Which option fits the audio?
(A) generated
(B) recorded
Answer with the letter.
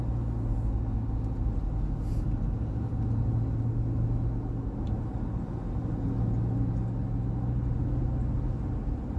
B